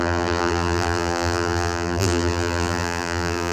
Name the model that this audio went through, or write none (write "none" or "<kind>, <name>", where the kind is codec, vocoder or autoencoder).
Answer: vocoder, BigVGAN v2